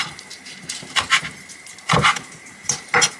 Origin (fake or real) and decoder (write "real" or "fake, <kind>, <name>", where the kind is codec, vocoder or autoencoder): real